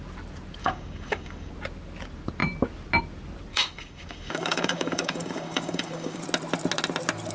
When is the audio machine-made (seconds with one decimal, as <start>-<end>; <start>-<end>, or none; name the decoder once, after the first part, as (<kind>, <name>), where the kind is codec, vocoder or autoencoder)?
0.6-1.5 (codec, DAC); 3.5-6.2